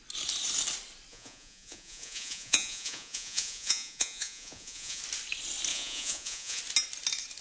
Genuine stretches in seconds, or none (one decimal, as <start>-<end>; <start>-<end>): 0.0-1.1; 5.0-5.7; 6.6-7.4